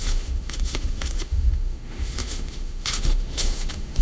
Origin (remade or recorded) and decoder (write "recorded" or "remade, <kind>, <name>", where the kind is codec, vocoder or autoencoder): remade, autoencoder, DAC-VAE